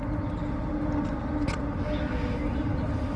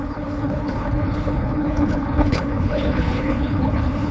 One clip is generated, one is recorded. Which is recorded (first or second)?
first